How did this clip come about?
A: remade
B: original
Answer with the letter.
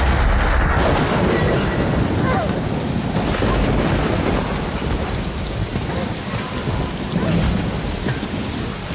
B